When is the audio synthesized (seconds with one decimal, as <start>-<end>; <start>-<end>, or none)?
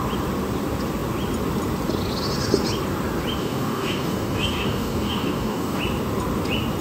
3.4-5.8